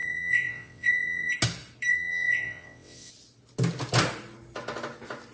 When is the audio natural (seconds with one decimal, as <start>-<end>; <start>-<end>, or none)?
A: 1.3-1.9; 3.1-5.3

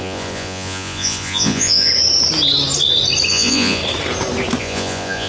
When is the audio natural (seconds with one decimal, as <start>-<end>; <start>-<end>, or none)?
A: 1.9-3.3; 3.8-4.6